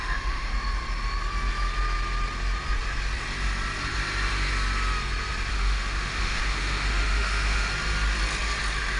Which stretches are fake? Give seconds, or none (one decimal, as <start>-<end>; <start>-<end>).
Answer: 0.0-0.5; 5.5-7.7